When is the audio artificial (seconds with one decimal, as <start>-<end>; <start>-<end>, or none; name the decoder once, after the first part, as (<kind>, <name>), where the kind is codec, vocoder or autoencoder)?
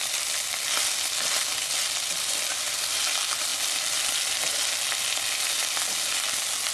none